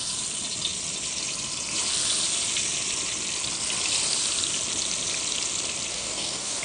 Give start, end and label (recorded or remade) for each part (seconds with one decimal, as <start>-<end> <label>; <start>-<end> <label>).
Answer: 0.0-5.9 recorded; 5.9-6.6 remade